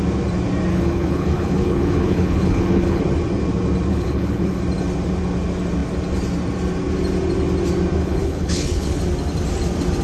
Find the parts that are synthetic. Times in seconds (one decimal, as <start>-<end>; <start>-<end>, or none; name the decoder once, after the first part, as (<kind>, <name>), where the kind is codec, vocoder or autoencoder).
0.7-3.0 (codec, HILCodec); 3.9-4.6; 8.0-9.0